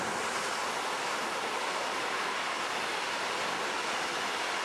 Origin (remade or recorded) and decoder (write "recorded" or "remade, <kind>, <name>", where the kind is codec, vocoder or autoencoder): recorded